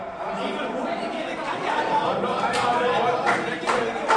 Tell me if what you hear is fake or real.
real